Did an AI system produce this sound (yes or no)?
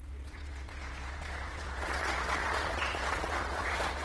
yes